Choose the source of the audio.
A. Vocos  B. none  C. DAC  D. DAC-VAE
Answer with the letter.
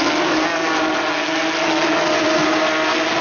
B